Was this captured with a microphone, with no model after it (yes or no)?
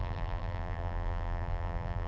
no